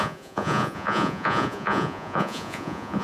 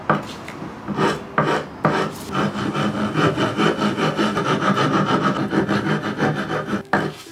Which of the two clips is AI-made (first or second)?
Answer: first